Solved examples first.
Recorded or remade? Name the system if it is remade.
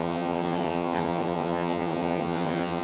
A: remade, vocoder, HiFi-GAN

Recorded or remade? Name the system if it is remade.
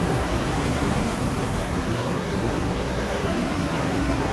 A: remade, codec, SNAC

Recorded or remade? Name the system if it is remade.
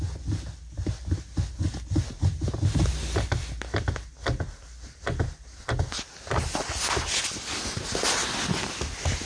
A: recorded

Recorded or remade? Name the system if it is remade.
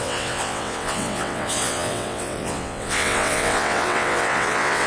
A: remade, vocoder, WaveNeXt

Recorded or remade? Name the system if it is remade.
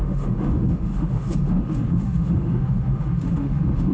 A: remade, autoencoder, DAC-VAE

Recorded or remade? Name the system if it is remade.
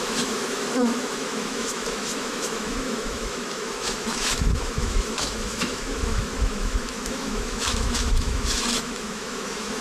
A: remade, autoencoder, DAC-VAE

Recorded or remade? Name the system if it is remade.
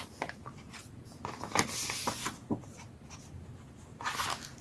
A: recorded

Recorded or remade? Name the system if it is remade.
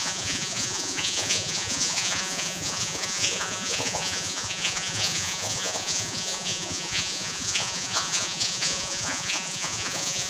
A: remade, vocoder, Vocos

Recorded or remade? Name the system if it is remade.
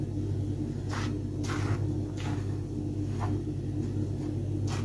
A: recorded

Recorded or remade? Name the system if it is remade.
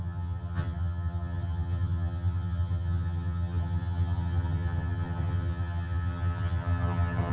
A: remade, vocoder, HiFi-GAN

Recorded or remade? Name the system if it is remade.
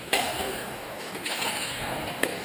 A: remade, codec, DAC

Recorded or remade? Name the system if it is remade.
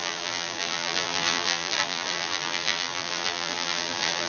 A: remade, vocoder, BigVGAN v2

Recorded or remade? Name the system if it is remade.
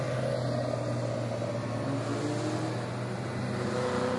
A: recorded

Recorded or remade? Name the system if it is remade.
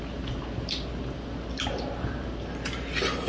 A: recorded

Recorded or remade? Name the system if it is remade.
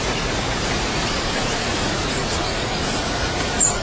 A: remade, vocoder, Vocos